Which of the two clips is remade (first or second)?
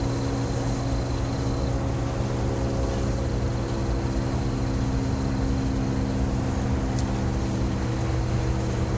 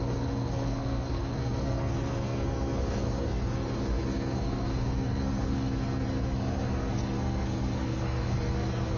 second